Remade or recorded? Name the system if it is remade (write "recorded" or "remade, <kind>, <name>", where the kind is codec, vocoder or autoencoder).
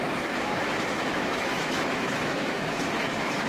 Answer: remade, autoencoder, DAC-VAE